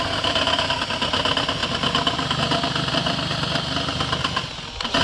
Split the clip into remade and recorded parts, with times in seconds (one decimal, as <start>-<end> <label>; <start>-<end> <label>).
0.0-1.6 remade; 1.6-2.9 recorded; 2.9-5.0 remade

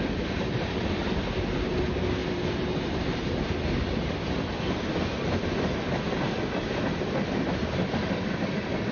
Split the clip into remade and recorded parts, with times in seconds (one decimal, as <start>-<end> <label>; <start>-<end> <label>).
0.0-1.0 recorded; 1.0-1.8 remade; 1.8-2.2 recorded; 2.2-4.1 remade; 4.1-8.9 recorded

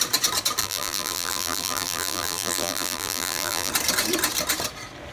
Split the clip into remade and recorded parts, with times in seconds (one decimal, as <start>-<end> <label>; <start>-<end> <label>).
0.0-0.6 recorded; 0.6-3.7 remade; 3.7-5.1 recorded